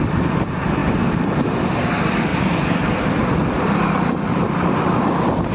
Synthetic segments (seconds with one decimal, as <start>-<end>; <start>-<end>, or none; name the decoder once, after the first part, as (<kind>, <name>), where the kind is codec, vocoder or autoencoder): none